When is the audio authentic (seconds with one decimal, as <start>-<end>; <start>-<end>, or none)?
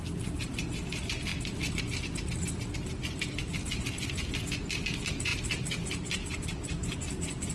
0.0-1.3; 3.8-7.5